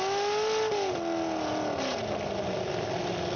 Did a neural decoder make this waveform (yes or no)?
no